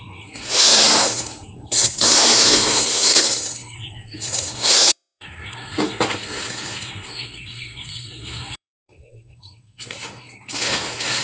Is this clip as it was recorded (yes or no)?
no